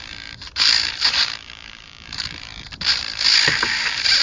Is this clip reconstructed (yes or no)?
yes